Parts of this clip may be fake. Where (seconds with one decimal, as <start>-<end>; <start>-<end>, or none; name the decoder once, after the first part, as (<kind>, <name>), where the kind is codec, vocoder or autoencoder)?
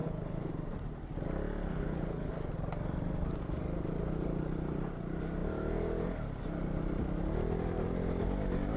0.0-0.5 (codec, HILCodec); 1.7-2.3